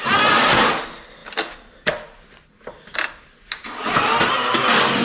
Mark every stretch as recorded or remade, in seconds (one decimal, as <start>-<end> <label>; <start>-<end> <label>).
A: 0.0-5.0 recorded